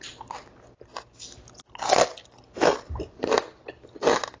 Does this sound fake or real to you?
real